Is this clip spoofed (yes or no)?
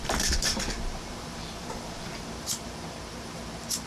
yes